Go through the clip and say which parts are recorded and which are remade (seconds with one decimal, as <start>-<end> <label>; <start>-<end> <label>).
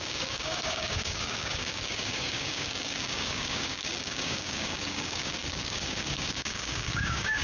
0.0-7.4 remade